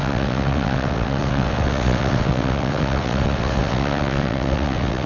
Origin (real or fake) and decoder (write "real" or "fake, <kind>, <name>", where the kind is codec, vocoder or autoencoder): fake, vocoder, WaveNeXt